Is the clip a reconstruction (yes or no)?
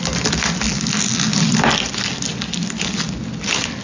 no